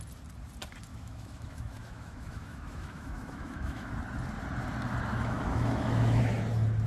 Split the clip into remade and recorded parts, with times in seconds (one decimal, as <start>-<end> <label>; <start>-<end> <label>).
0.0-0.9 recorded; 0.9-3.9 remade; 3.9-5.1 recorded; 5.1-6.2 remade; 6.2-6.9 recorded